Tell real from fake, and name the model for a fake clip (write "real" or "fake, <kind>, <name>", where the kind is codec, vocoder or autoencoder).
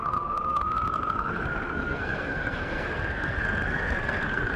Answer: fake, codec, SNAC